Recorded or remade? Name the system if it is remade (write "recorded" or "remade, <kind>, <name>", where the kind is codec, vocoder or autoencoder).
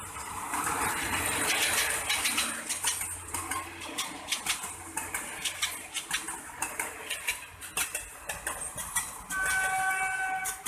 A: recorded